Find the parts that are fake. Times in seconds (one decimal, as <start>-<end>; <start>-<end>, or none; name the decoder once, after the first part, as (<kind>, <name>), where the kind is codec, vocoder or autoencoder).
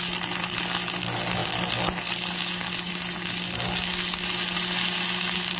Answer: none